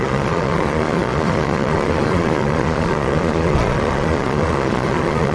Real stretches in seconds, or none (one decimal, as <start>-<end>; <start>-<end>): none